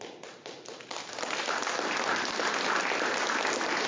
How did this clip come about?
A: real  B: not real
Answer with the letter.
A